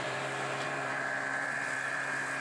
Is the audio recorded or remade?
remade